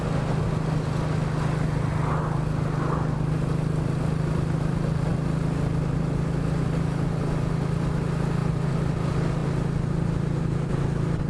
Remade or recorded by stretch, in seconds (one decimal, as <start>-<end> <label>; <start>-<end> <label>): 0.0-11.3 recorded